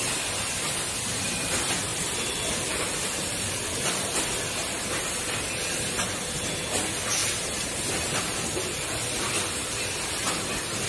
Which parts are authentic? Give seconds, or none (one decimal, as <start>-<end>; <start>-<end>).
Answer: 0.0-1.9; 4.2-7.2; 9.3-10.9